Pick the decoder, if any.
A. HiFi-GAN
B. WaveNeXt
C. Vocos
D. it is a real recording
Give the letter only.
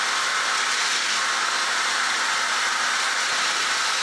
D